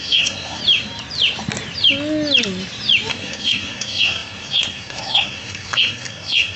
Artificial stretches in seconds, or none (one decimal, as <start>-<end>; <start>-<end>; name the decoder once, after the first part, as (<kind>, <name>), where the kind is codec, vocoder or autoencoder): 0.0-0.6 (codec, SNAC); 3.1-6.6